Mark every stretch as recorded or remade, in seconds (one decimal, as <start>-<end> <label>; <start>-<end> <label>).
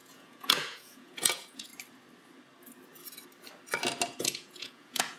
0.0-1.7 remade; 1.7-4.2 recorded; 4.2-5.2 remade